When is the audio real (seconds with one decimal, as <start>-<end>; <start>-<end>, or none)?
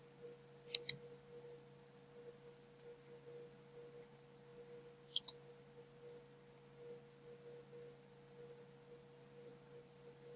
0.0-10.4